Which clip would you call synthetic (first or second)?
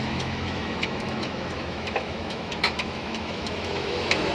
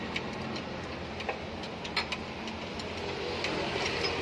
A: first